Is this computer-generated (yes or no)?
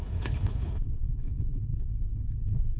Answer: yes